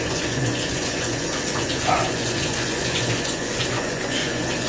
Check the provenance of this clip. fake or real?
fake